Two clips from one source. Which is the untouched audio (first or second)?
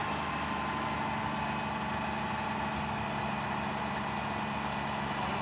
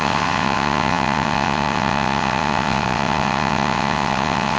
first